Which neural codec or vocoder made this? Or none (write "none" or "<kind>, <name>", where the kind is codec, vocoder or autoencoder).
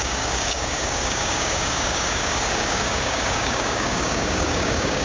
codec, DAC